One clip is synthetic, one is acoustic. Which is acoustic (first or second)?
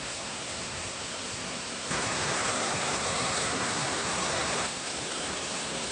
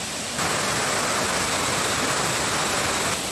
second